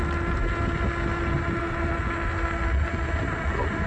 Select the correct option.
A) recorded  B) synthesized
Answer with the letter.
A